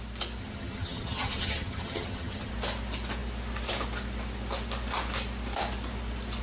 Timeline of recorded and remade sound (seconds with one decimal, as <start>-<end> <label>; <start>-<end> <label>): 0.0-0.4 recorded; 0.4-2.5 remade; 2.5-6.4 recorded